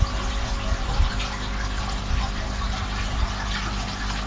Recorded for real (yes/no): yes